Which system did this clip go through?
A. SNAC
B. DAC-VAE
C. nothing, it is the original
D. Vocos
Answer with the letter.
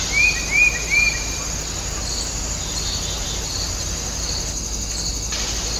C